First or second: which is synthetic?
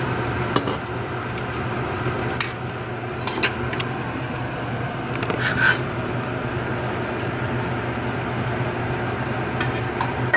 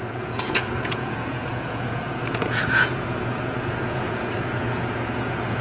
second